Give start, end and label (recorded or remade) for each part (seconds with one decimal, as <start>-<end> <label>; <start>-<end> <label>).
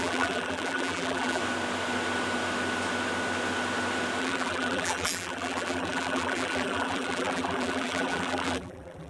0.0-1.4 remade; 1.4-4.2 recorded; 4.2-9.1 remade